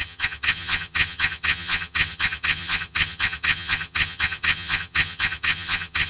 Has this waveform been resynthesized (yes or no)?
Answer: yes